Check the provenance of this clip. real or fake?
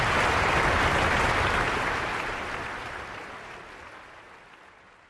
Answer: real